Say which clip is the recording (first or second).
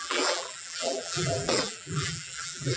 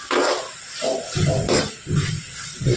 second